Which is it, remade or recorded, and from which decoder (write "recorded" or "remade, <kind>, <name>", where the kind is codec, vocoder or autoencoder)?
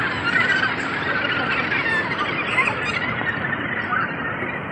recorded